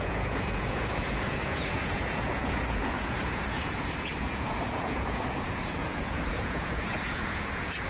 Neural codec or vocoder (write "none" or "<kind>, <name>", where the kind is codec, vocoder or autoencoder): vocoder, Vocos